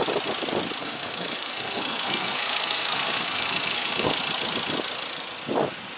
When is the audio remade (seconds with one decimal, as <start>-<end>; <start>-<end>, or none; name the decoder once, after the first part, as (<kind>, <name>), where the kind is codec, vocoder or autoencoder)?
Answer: 0.8-4.2 (codec, SNAC)